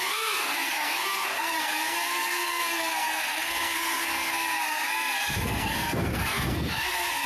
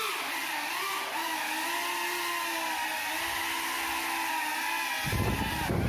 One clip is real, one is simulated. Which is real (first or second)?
second